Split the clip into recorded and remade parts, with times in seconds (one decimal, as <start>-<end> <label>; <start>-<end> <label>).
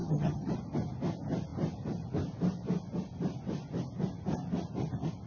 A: 0.0-0.5 remade; 0.5-5.3 recorded